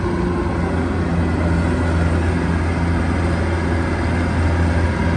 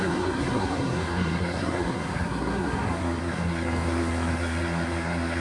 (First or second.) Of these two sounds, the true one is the first